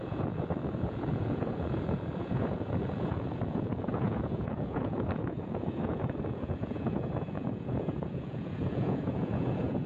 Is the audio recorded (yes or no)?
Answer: no